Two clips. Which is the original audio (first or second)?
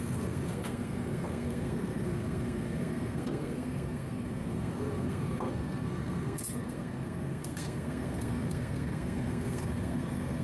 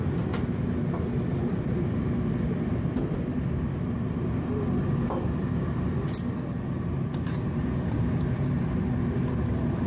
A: second